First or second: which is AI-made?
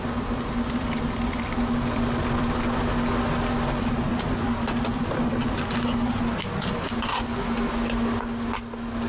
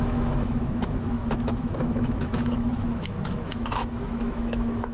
second